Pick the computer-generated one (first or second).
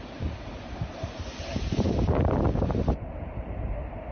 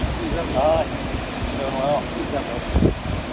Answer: first